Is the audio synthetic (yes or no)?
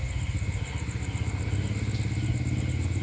no